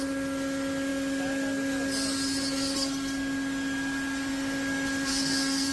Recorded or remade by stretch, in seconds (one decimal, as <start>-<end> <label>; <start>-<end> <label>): 0.0-5.1 recorded; 5.1-5.7 remade